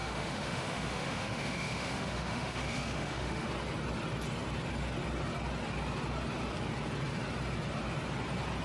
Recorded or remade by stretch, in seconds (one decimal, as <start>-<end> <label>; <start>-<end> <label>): 0.0-3.5 remade; 3.5-8.6 recorded